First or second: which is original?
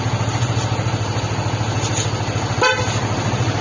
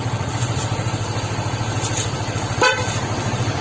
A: first